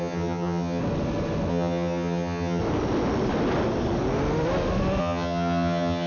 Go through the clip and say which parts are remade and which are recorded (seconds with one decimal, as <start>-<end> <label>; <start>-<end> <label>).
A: 0.0-0.8 remade; 0.8-1.5 recorded; 1.5-2.6 remade; 2.6-5.0 recorded; 5.0-6.1 remade